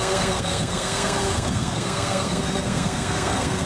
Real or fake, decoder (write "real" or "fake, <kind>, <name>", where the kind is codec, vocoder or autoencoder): fake, codec, SNAC